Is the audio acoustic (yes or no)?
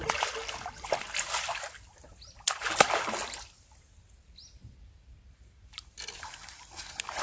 yes